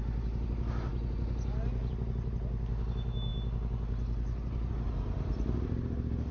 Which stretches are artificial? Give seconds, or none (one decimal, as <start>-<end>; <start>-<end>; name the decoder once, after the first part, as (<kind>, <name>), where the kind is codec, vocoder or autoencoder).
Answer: none